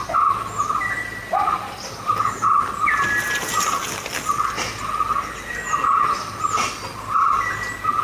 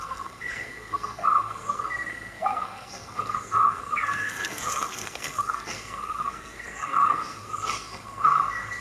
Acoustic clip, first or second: first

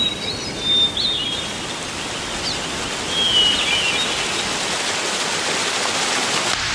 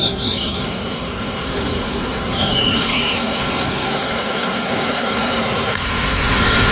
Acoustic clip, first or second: first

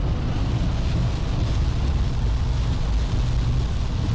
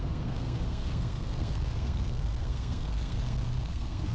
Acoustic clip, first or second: first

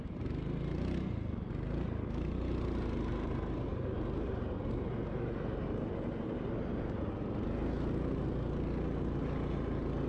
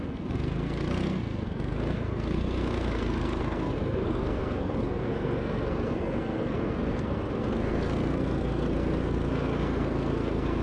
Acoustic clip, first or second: first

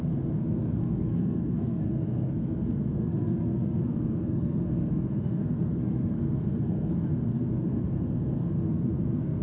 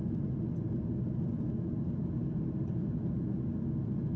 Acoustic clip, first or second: second